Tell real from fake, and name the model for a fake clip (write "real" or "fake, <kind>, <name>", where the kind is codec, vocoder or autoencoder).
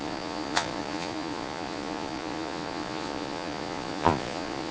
fake, vocoder, Vocos